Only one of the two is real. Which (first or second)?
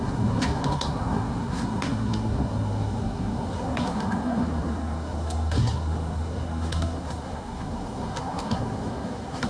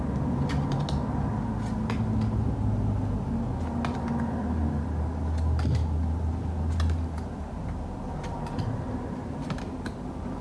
second